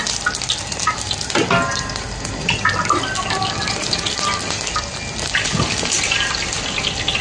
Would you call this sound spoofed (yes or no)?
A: no